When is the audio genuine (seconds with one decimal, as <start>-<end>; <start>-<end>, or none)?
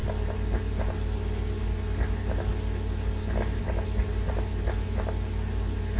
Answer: 0.0-6.0